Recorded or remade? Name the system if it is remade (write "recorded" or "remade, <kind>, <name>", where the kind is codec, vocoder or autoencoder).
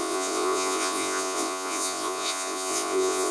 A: remade, vocoder, Vocos